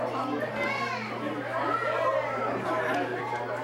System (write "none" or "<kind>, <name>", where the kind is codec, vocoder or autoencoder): none